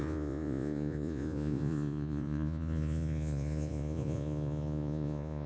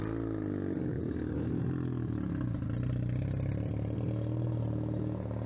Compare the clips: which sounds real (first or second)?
second